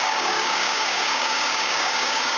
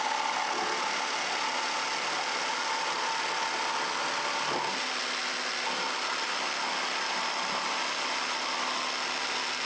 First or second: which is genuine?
second